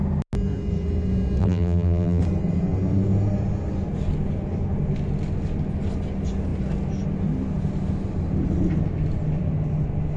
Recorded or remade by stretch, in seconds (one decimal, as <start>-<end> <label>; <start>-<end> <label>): 0.0-1.4 recorded; 1.4-2.2 remade; 2.2-10.2 recorded